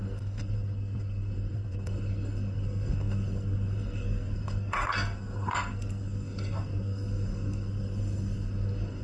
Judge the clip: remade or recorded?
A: remade